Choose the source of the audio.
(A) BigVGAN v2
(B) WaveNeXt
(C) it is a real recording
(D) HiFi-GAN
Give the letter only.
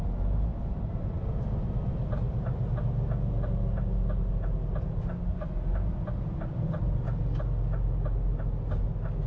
C